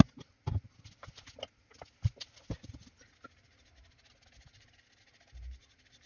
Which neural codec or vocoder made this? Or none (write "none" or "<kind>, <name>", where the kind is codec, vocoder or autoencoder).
none